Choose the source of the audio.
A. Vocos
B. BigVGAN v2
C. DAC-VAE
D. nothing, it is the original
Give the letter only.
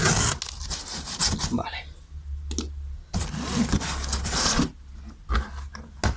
D